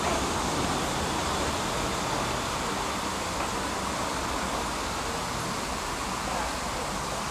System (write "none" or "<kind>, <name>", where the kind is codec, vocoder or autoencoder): none